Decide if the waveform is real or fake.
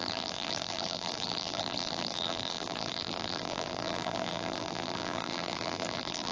fake